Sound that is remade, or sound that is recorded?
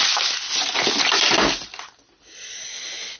recorded